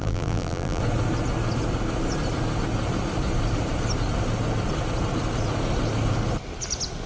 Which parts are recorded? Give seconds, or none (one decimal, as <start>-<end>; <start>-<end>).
0.8-7.1